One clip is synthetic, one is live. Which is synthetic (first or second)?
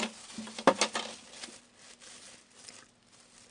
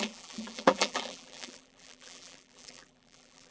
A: second